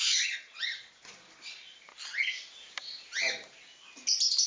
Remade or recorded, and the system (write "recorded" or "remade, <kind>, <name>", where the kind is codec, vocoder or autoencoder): recorded